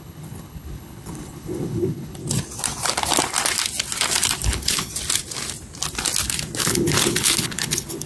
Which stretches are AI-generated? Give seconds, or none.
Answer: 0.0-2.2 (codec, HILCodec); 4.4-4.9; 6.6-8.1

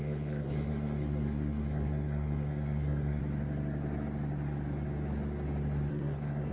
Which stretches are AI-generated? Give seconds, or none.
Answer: 0.0-3.2 (codec, SNAC); 5.9-6.5